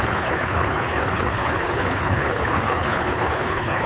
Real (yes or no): no